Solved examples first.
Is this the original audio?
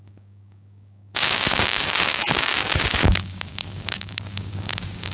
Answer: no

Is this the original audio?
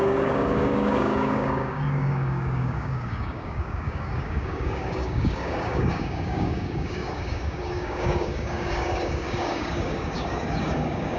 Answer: no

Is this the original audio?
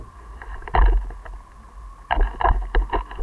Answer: yes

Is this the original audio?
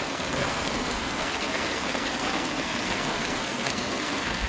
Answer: no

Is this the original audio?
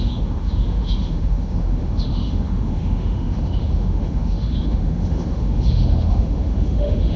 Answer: no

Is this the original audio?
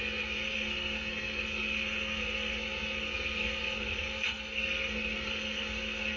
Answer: no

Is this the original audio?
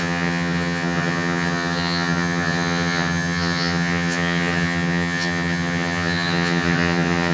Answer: no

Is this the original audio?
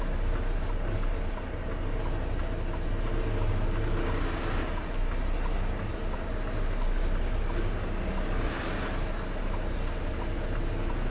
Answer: yes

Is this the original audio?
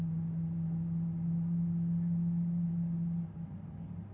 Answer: yes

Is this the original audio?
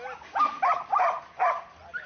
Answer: yes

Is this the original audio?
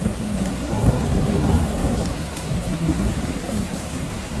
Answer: no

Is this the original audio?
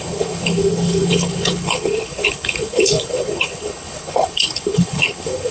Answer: no